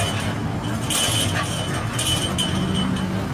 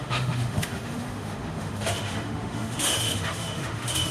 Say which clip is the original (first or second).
first